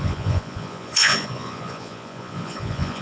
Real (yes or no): no